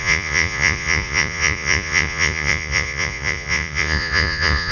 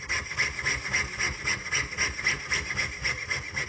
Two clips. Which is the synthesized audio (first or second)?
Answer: first